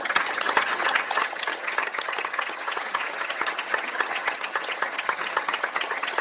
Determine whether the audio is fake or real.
fake